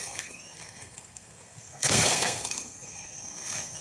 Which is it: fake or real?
fake